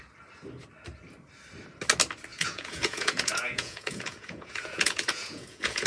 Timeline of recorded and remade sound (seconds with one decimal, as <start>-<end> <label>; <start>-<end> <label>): 0.0-2.3 recorded; 2.3-5.9 remade